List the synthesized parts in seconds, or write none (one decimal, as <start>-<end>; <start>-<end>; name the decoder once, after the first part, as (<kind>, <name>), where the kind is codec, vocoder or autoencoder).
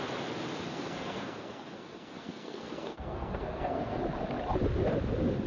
0.7-4.0 (codec, SNAC)